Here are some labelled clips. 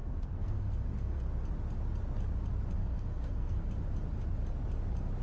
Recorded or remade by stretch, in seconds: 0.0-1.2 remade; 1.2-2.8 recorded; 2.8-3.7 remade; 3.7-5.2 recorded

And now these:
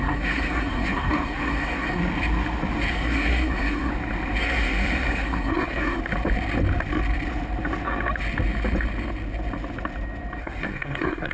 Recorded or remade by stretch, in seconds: 0.0-2.0 remade; 2.0-2.9 recorded; 2.9-3.9 remade; 3.9-4.4 recorded; 4.4-6.0 remade; 6.0-10.4 recorded; 10.4-11.3 remade

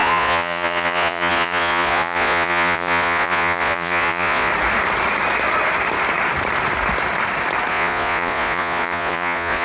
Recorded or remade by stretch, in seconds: 0.0-4.5 remade; 4.5-7.7 recorded; 7.7-9.6 remade

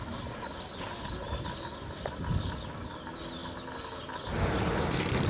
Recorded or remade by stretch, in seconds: 0.0-5.3 recorded

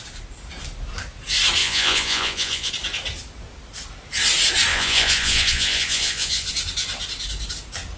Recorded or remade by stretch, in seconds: 0.0-1.6 recorded; 1.6-2.7 remade; 2.7-4.7 recorded; 4.7-6.5 remade; 6.5-8.0 recorded

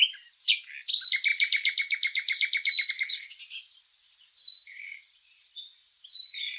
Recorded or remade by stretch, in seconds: 0.0-4.6 recorded; 4.6-6.6 remade